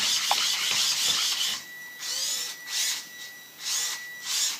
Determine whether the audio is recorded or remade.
recorded